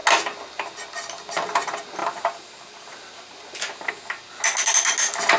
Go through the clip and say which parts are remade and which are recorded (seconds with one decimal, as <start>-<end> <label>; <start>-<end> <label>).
0.0-2.0 recorded; 2.0-3.9 remade; 3.9-5.4 recorded